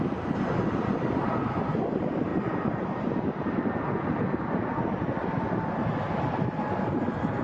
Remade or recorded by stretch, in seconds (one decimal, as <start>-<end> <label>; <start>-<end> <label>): 0.0-7.4 recorded